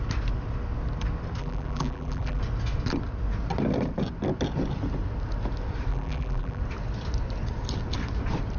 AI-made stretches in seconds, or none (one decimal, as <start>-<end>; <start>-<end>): 1.4-2.4; 5.9-6.6